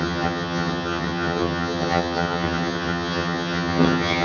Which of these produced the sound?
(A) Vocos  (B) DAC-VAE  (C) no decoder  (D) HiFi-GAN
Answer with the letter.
D